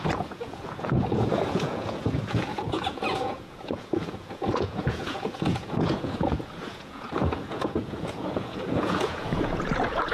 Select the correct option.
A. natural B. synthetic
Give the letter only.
B